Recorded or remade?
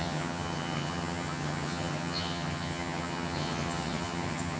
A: remade